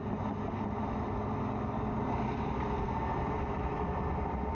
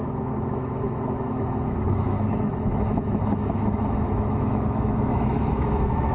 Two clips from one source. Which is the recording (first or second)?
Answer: first